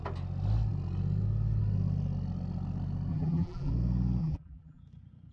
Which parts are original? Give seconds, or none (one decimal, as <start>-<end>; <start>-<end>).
0.0-3.1; 3.7-4.2; 4.8-5.3